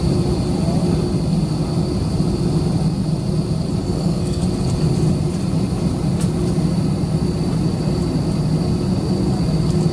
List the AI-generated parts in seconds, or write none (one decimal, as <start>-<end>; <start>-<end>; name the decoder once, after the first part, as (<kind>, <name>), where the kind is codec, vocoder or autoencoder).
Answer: 3.8-4.4 (codec, SNAC)